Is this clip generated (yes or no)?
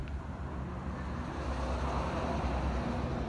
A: no